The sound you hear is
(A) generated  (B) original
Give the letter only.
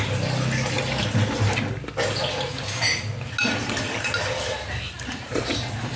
B